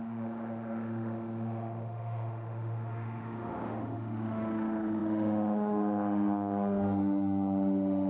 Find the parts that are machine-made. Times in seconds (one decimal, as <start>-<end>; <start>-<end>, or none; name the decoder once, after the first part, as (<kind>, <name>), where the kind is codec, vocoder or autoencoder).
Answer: 0.0-8.1 (autoencoder, DAC-VAE)